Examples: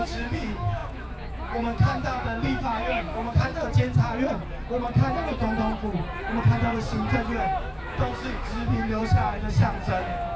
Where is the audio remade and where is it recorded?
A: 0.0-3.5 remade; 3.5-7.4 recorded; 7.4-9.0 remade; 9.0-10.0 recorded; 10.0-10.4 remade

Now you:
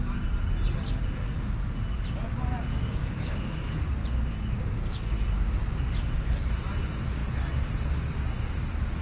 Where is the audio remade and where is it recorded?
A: 0.0-2.7 recorded; 2.7-3.8 remade; 3.8-9.0 recorded

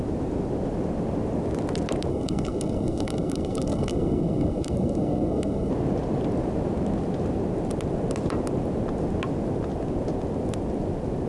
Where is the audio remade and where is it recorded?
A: 0.0-2.1 recorded; 2.1-5.7 remade; 5.7-11.3 recorded

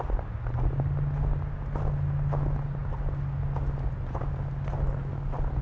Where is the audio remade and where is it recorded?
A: 0.0-5.6 recorded

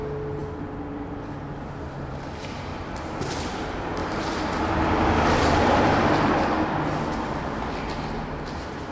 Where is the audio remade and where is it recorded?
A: 0.0-4.0 recorded; 4.0-5.5 remade; 5.5-8.9 recorded

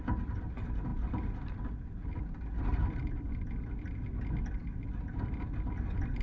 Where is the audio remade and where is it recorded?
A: 0.0-6.2 recorded